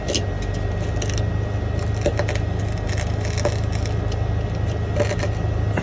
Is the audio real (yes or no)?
yes